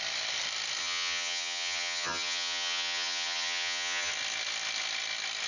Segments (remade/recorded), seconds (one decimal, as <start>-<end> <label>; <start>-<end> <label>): 0.0-0.8 recorded; 0.8-4.1 remade; 4.1-5.5 recorded